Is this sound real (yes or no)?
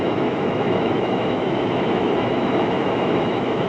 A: no